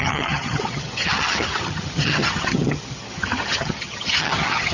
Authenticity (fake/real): fake